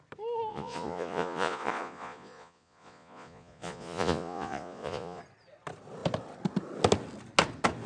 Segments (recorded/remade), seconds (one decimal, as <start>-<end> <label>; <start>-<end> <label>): 0.0-0.5 recorded; 0.5-5.2 remade; 5.2-7.9 recorded